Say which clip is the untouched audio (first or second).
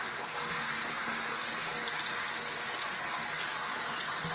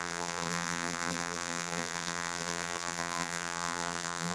first